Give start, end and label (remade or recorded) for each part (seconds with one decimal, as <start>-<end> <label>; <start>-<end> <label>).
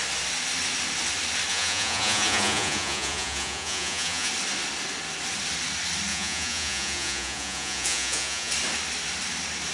0.0-1.5 recorded; 1.5-4.3 remade; 4.3-6.1 recorded; 6.1-8.5 remade; 8.5-9.7 recorded